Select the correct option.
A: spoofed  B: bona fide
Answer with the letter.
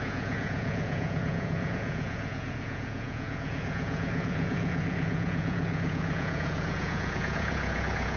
A